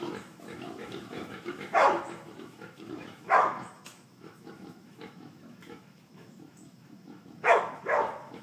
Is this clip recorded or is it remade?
remade